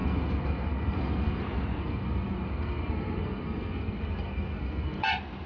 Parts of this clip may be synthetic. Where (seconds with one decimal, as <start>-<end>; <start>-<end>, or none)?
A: 0.0-1.4; 1.8-5.1